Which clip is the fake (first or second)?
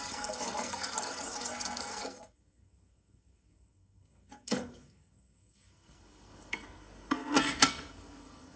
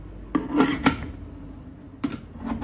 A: first